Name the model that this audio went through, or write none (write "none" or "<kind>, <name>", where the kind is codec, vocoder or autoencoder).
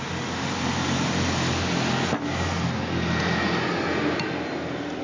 none